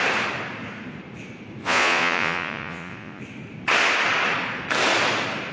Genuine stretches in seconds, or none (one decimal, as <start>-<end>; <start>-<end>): 0.0-1.6; 3.2-5.5